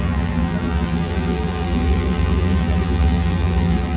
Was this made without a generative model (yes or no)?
no